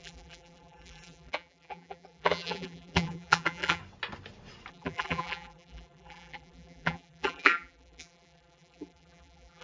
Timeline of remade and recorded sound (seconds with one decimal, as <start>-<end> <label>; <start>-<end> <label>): 0.0-3.8 remade; 3.8-4.7 recorded; 4.7-9.6 remade